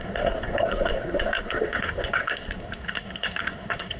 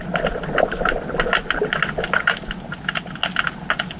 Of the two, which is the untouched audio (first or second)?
second